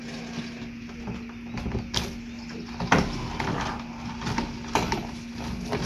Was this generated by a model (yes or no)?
no